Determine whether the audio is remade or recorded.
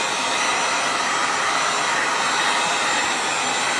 recorded